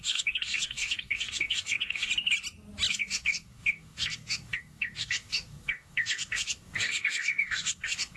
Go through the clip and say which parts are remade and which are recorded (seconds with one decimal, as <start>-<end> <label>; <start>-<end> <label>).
0.0-2.1 remade; 2.1-2.9 recorded; 2.9-8.2 remade